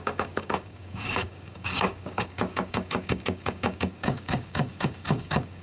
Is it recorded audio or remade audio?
remade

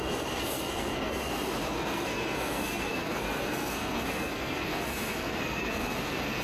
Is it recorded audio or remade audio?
remade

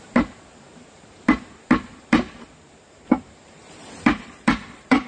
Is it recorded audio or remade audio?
remade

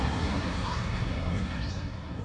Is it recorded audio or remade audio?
remade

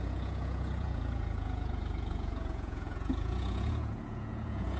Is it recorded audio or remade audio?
remade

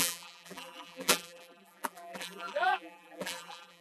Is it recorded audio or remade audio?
remade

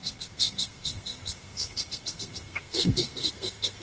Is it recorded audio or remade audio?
remade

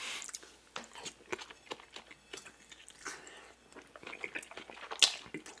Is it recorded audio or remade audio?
recorded